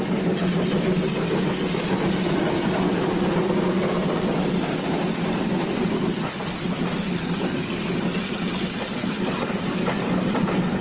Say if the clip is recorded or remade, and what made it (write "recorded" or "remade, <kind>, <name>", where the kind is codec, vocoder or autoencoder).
recorded